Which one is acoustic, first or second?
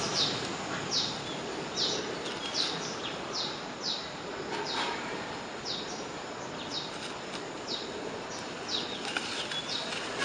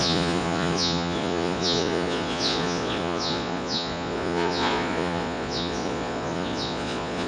first